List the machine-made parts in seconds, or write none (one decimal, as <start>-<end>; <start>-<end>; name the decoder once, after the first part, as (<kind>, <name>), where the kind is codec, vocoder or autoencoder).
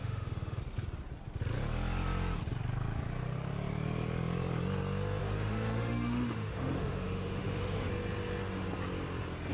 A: 0.0-0.6 (autoencoder, DAC-VAE); 5.2-7.9